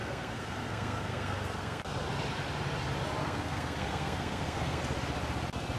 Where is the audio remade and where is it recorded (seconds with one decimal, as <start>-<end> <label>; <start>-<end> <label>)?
0.0-1.8 remade; 1.8-3.2 recorded; 3.2-4.8 remade; 4.8-5.8 recorded